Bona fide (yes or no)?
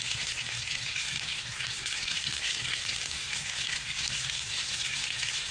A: no